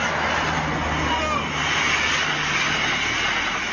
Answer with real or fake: real